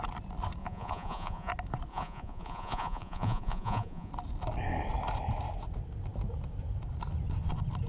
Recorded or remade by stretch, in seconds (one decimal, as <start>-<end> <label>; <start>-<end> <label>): 0.0-0.6 recorded; 0.6-1.5 remade; 1.5-1.9 recorded; 1.9-4.1 remade; 4.1-7.9 recorded